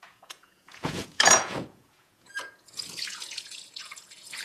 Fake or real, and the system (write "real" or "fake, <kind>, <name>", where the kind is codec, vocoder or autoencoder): fake, vocoder, Vocos